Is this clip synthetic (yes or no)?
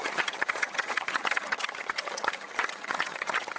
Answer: yes